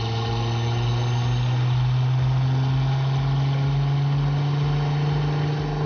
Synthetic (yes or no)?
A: no